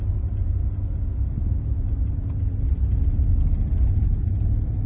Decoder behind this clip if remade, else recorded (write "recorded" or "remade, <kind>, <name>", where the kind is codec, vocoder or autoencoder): recorded